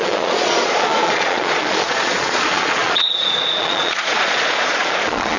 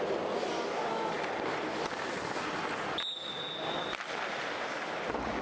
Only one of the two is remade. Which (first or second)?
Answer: first